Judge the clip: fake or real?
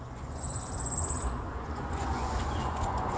fake